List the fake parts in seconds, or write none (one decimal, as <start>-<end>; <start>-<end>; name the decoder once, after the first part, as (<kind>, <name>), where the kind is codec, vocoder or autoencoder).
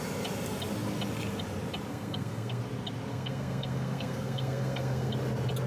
1.9-2.6 (codec, SNAC); 3.1-5.1